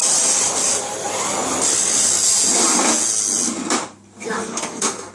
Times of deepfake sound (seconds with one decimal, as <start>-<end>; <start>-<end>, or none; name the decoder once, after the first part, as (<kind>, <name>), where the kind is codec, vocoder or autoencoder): 4.4-5.1 (codec, SNAC)